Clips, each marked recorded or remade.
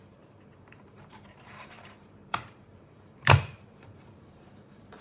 remade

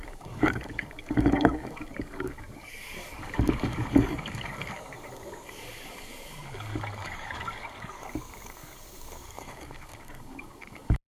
remade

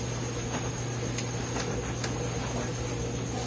recorded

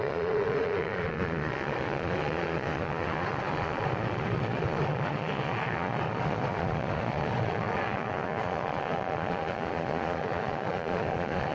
remade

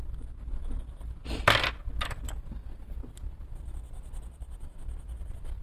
remade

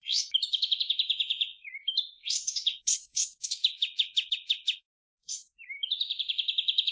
remade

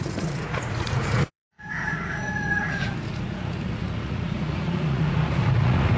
remade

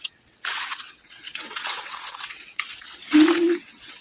remade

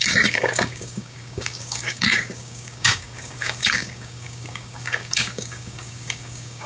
remade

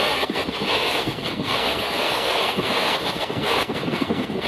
remade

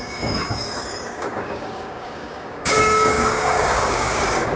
remade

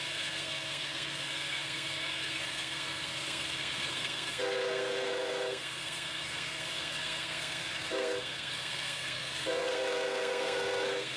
remade